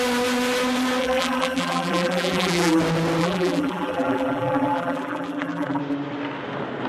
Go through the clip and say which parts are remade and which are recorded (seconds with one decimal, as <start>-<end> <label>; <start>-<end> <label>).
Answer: 0.0-1.0 recorded; 1.0-2.8 remade; 2.8-3.2 recorded; 3.2-5.8 remade; 5.8-6.9 recorded